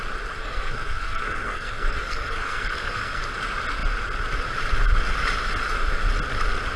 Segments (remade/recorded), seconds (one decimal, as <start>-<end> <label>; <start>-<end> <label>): 0.0-0.4 recorded; 0.4-3.2 remade; 3.2-6.8 recorded